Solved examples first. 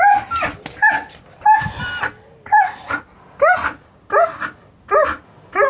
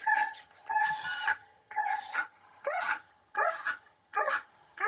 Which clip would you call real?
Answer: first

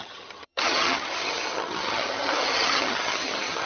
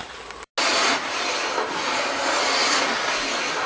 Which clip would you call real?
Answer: second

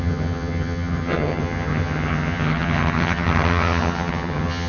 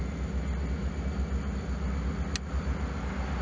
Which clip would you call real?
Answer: second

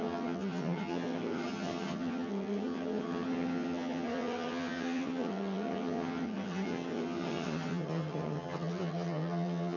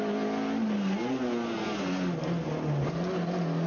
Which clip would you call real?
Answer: second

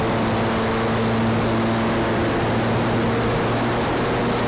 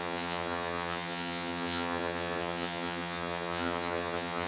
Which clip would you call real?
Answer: first